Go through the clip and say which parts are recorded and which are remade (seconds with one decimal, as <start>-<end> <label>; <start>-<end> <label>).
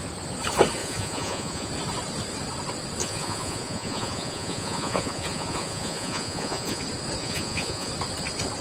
0.0-0.8 recorded; 0.8-1.7 remade; 1.7-3.0 recorded; 3.0-6.8 remade; 6.8-7.2 recorded; 7.2-7.9 remade; 7.9-8.6 recorded